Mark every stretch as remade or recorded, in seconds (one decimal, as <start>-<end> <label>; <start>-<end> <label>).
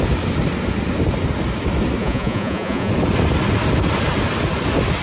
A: 0.0-2.0 recorded; 2.0-2.9 remade; 2.9-5.0 recorded